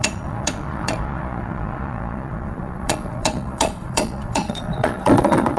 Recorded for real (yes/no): no